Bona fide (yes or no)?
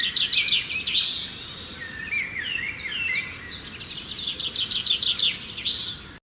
yes